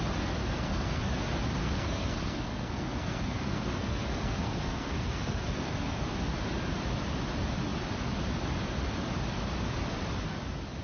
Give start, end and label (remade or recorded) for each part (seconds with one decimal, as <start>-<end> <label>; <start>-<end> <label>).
0.0-0.4 recorded; 0.4-1.1 remade; 1.1-1.6 recorded; 1.6-6.0 remade; 6.0-10.8 recorded